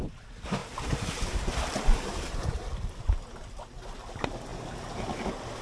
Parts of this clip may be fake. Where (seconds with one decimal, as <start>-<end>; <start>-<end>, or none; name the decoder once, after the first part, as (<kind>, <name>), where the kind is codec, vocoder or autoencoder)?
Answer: none